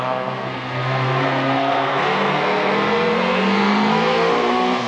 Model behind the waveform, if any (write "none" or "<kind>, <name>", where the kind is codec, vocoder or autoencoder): codec, SNAC